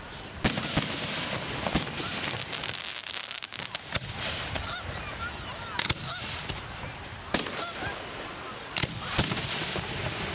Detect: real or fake real